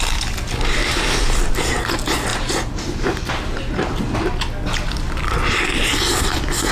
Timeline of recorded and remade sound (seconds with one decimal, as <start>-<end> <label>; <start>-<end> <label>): 0.0-2.3 recorded; 2.3-4.0 remade; 4.0-6.7 recorded